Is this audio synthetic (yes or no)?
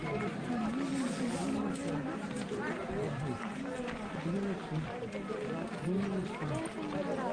no